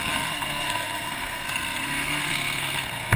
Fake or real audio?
fake